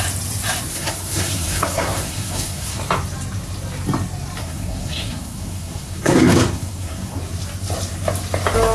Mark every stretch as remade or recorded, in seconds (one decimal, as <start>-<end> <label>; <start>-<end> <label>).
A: 0.0-0.7 recorded; 0.7-2.8 remade; 2.8-4.4 recorded; 4.4-7.2 remade; 7.2-8.7 recorded